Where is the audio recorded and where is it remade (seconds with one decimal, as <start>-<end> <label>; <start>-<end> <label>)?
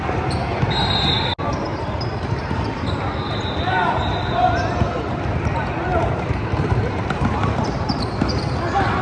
0.0-1.7 recorded; 1.7-2.8 remade; 2.8-5.9 recorded; 5.9-8.1 remade; 8.1-9.0 recorded